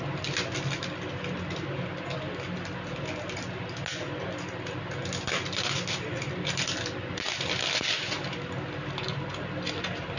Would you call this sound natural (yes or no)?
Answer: yes